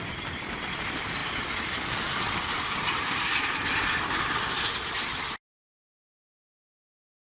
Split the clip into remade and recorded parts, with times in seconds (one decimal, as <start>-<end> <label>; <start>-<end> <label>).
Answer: 0.0-7.2 recorded